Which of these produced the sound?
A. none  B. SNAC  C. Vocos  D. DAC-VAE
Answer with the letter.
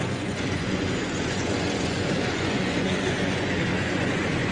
C